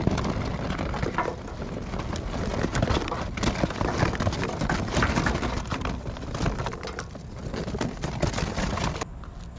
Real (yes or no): yes